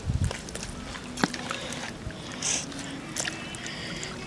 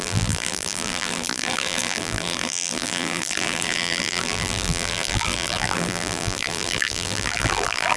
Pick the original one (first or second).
first